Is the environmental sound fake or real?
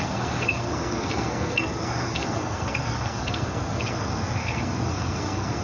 fake